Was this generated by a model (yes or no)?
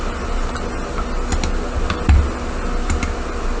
no